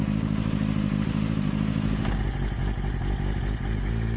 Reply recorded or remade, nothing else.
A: recorded